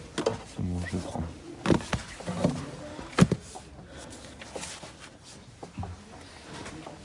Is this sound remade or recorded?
recorded